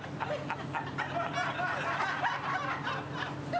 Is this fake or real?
real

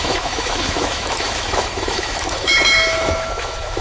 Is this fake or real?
fake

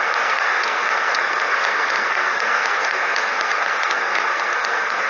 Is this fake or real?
fake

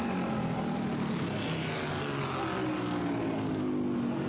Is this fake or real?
real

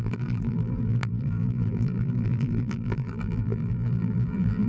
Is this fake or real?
fake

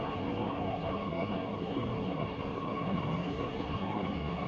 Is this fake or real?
fake